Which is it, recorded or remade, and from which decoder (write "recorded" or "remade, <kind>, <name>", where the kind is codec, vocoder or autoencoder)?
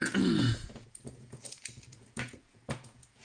remade, vocoder, Vocos